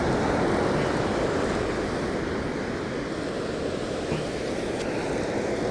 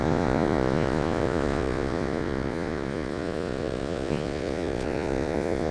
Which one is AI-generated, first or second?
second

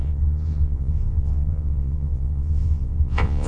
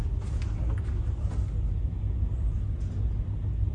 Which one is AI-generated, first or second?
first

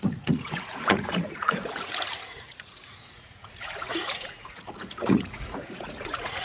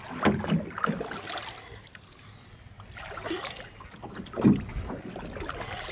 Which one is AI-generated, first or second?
first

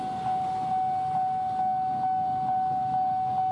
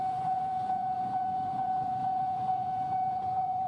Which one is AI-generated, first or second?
second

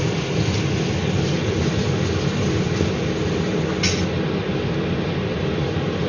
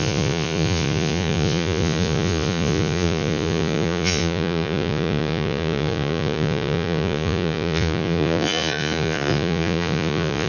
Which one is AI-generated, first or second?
second